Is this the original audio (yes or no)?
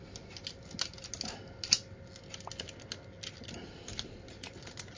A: yes